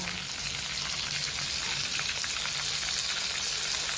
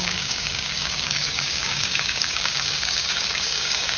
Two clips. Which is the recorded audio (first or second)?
first